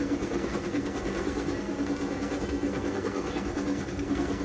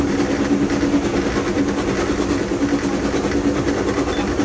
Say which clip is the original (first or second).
second